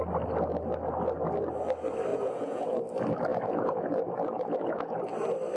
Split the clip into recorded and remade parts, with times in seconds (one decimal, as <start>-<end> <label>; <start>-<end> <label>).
0.0-2.1 recorded; 2.1-2.8 remade; 2.8-3.3 recorded; 3.3-5.0 remade; 5.0-5.6 recorded